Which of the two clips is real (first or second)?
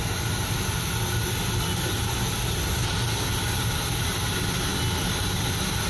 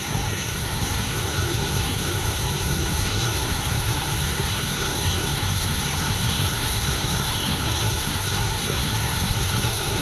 first